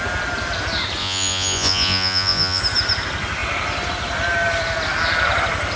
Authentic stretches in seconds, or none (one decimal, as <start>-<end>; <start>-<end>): 0.0-1.0; 2.6-5.8

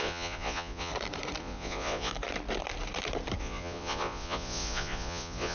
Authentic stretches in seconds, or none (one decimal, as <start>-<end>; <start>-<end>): 0.9-1.4; 2.1-3.4

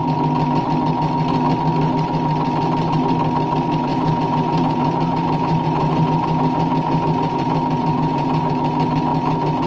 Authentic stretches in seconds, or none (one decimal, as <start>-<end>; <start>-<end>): 0.0-3.9; 8.5-9.1

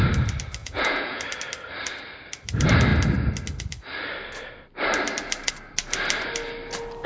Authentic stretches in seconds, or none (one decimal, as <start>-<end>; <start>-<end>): 0.0-0.6; 1.2-7.1

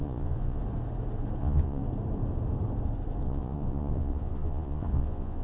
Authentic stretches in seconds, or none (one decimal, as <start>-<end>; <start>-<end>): 0.6-1.4; 1.8-3.2

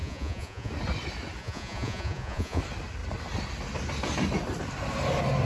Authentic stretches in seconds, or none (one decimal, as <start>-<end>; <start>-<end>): 0.7-1.4; 2.6-5.4